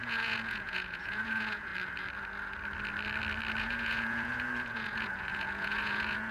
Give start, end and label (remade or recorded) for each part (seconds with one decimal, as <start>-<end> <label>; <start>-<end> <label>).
0.0-1.7 remade; 1.7-3.6 recorded; 3.6-6.3 remade

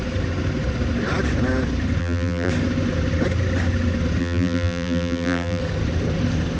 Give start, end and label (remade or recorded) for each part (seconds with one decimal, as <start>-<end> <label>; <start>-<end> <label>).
0.0-2.0 recorded; 2.0-2.5 remade; 2.5-4.2 recorded; 4.2-5.6 remade; 5.6-6.6 recorded